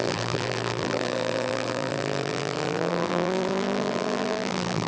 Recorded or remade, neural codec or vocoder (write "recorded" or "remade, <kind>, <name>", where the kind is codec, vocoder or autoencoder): remade, vocoder, BigVGAN v2